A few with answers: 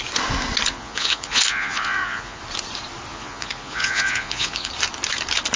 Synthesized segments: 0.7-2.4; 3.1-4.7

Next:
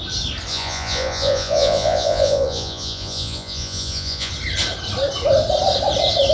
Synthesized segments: 0.5-4.3

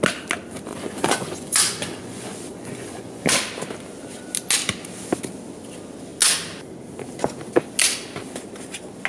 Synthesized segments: 0.7-3.3

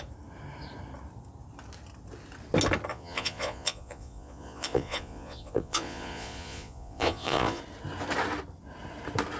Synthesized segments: 2.9-7.6

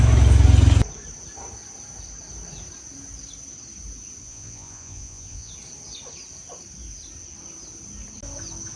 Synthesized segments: 4.2-5.5

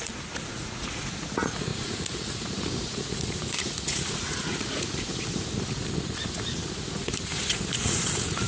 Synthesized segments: 0.0-5.1; 6.4-8.5